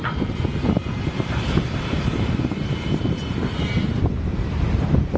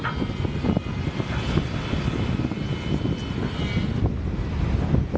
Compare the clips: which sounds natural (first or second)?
second